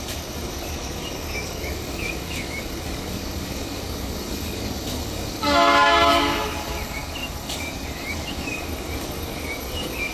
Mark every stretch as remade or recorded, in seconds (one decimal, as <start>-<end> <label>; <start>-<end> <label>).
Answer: 0.0-10.1 remade